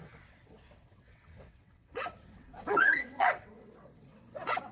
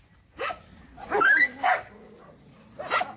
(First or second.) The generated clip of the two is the first